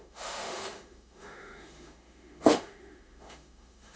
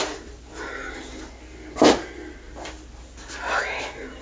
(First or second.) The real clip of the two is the second